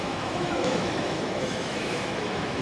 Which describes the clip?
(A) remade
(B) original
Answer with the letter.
A